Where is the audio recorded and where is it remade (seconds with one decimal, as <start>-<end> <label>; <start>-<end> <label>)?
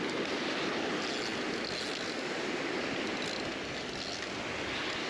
0.0-5.1 recorded